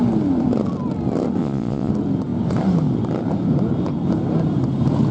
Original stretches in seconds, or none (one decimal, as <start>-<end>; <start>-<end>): 0.0-1.4; 1.9-5.1